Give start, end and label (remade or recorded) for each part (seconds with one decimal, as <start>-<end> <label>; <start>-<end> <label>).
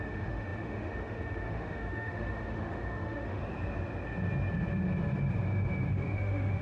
0.0-3.4 remade; 3.4-5.9 recorded; 5.9-6.6 remade